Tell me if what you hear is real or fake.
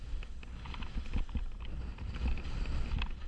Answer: real